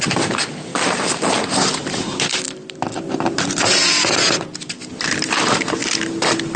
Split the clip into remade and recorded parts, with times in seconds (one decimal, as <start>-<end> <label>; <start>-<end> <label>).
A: 0.0-0.7 remade; 0.7-2.5 recorded; 2.5-6.6 remade